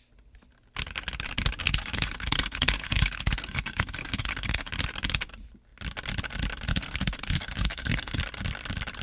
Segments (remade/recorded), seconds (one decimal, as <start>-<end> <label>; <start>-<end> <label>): 0.0-1.6 recorded; 1.6-4.7 remade; 4.7-6.7 recorded; 6.7-8.2 remade; 8.2-9.0 recorded